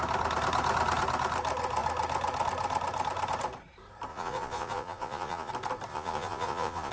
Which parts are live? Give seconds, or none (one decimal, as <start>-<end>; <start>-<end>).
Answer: 0.0-4.1; 5.5-5.9